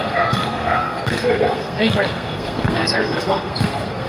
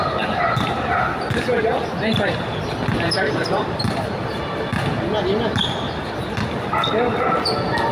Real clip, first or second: second